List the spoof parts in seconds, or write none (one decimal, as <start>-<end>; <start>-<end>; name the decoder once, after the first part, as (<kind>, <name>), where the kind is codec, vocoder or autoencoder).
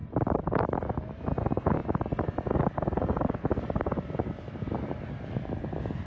none